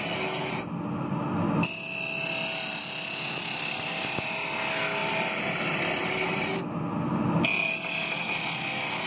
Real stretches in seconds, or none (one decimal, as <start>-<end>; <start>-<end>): 0.0-5.0; 5.6-9.1